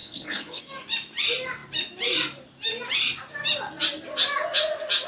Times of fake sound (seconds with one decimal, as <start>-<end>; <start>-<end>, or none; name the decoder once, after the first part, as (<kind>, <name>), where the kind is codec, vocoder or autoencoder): 0.0-0.6 (codec, HILCodec)